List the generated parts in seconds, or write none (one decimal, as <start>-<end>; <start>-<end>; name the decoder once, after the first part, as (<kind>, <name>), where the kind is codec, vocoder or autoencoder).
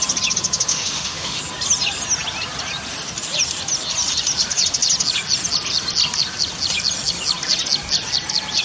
0.7-1.4 (autoencoder, DAC-VAE)